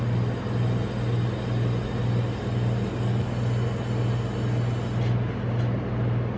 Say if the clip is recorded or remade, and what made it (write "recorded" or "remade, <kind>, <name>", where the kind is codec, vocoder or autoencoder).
recorded